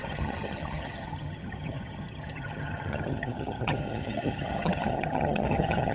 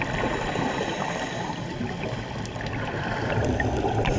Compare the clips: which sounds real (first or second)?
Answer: second